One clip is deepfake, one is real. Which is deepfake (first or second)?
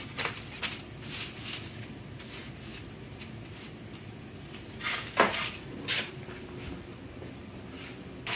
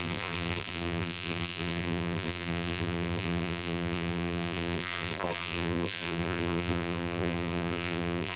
second